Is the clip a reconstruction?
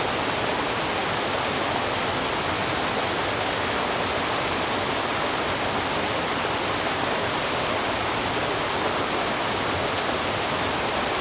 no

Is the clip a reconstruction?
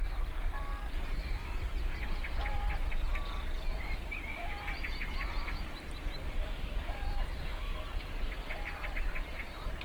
yes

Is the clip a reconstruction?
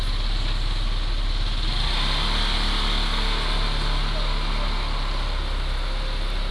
no